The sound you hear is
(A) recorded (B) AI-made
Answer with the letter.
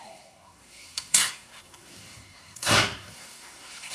B